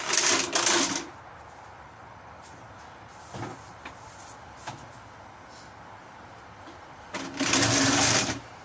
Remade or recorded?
recorded